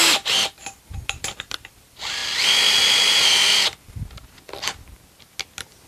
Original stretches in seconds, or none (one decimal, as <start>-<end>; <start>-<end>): 2.2-5.9